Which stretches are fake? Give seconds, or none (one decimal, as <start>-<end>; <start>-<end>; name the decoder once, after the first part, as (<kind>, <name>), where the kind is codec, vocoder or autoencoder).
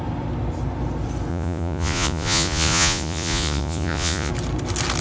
1.3-4.3 (vocoder, Vocos)